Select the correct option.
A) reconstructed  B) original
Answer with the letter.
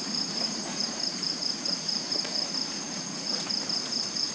A